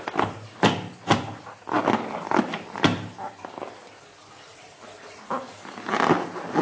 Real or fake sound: real